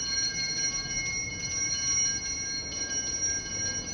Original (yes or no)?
yes